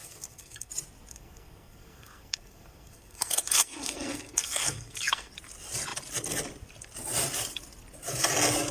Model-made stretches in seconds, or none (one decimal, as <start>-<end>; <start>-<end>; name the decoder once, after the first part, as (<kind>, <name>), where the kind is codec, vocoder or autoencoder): 0.0-0.7 (codec, SNAC); 1.1-5.3